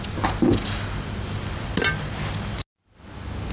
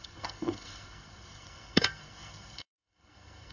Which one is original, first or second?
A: first